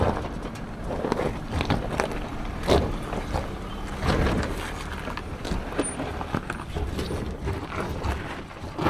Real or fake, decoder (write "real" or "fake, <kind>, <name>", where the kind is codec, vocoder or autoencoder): real